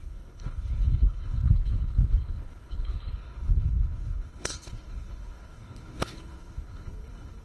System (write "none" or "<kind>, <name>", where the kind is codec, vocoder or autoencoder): codec, HILCodec